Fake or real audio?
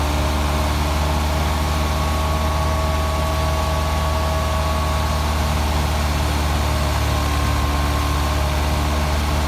real